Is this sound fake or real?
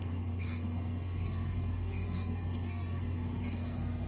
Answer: fake